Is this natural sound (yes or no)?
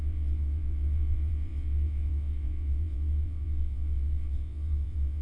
no